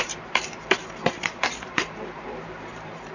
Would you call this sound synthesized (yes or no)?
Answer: yes